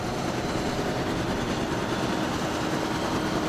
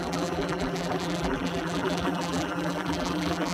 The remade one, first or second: second